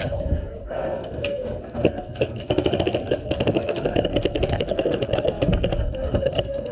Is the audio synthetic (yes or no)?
yes